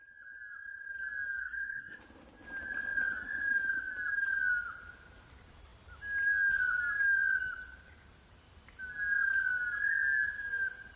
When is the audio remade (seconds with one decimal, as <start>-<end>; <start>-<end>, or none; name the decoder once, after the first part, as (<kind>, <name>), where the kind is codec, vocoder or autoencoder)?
1.4-2.0 (codec, SNAC)